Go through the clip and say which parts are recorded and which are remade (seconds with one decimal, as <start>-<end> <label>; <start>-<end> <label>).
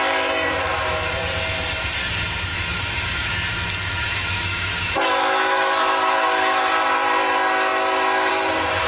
0.0-2.5 recorded; 2.5-3.3 remade; 3.3-4.0 recorded; 4.0-6.7 remade; 6.7-8.9 recorded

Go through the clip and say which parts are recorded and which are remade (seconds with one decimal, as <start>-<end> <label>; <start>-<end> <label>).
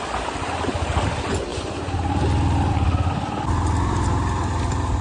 0.0-5.0 recorded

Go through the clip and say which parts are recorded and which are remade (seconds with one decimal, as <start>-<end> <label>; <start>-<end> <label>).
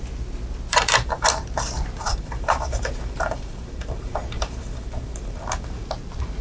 0.0-0.7 recorded; 0.7-1.3 remade; 1.3-2.1 recorded; 2.1-5.9 remade; 5.9-6.4 recorded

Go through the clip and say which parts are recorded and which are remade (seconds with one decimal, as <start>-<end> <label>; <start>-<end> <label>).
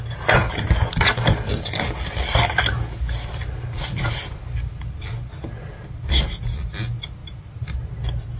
0.0-8.4 recorded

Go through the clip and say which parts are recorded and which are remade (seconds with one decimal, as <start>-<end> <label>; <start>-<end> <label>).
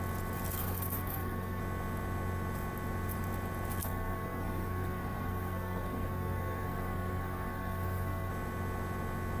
0.0-0.6 recorded; 0.6-1.6 remade; 1.6-3.8 recorded; 3.8-8.3 remade; 8.3-9.4 recorded